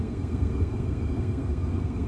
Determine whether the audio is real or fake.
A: fake